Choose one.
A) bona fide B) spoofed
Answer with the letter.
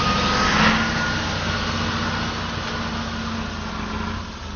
A